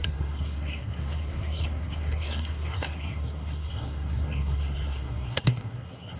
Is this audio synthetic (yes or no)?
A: yes